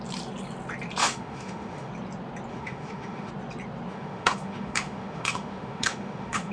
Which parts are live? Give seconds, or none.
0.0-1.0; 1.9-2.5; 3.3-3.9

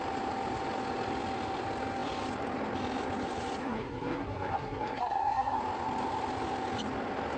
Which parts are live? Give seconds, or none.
0.0-3.6; 5.6-7.4

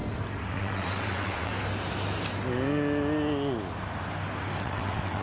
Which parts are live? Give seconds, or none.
0.0-0.5; 1.5-4.6

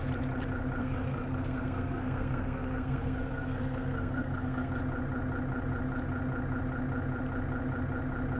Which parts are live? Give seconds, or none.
0.0-0.8; 4.7-8.4

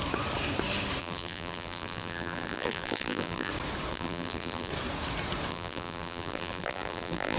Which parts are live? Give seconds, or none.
0.0-1.0; 3.5-3.9; 4.7-5.5

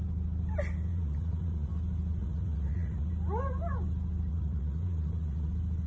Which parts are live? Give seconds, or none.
0.0-0.9; 1.7-2.2; 3.1-4.3; 5.5-5.9

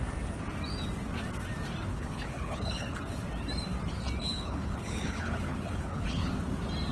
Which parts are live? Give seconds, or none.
0.0-1.9; 3.0-4.2; 6.3-6.9

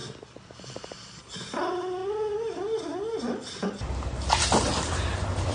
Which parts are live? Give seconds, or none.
0.0-5.5